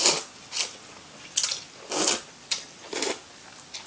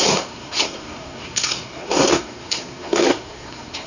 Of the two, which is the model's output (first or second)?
second